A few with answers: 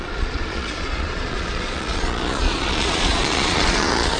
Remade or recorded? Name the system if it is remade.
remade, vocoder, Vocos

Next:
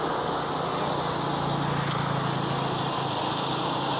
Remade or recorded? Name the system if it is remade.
recorded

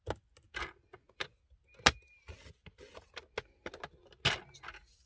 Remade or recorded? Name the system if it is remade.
recorded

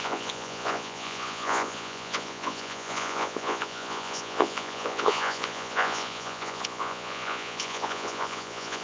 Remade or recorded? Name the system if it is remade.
remade, vocoder, Vocos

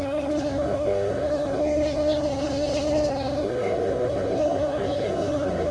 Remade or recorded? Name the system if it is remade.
remade, codec, SNAC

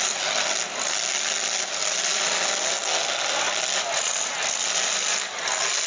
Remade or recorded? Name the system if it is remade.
recorded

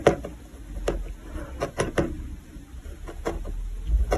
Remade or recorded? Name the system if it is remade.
recorded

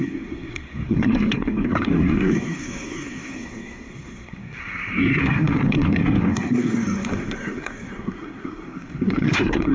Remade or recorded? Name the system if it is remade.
remade, codec, SNAC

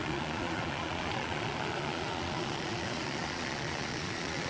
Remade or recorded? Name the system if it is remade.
remade, vocoder, Vocos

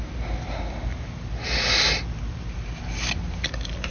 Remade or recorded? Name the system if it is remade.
recorded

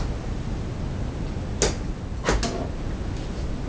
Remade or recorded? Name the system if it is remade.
recorded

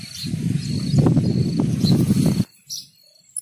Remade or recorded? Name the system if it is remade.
remade, vocoder, BigVGAN v2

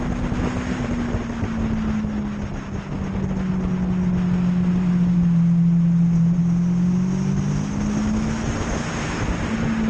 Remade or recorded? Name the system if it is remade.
recorded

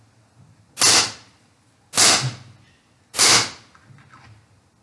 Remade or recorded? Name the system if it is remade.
recorded